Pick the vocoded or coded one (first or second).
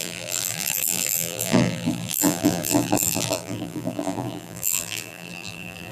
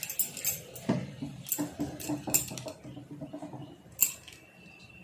first